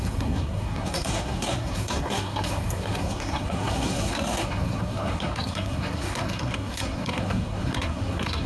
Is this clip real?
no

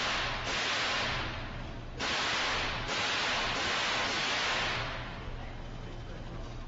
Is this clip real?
yes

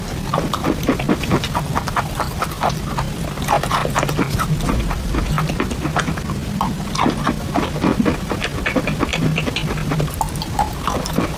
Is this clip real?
yes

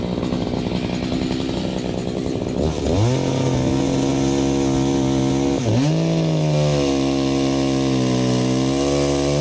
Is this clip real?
yes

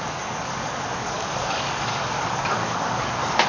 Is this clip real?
no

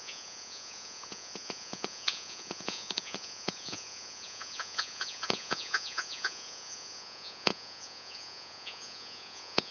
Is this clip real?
no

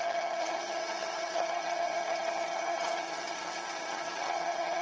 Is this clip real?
no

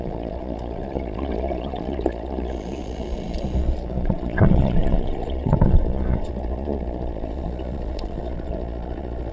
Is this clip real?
no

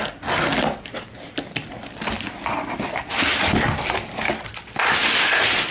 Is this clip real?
yes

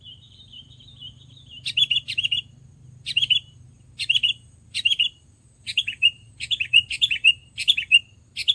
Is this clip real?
no